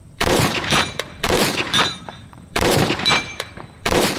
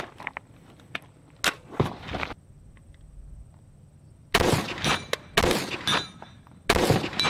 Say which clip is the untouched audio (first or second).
second